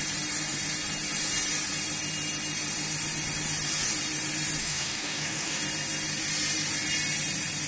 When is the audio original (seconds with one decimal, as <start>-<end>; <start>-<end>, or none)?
0.0-4.6; 5.6-7.7